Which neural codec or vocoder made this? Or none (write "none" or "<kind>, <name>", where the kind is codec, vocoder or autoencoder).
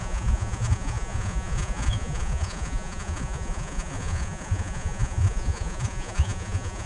vocoder, Vocos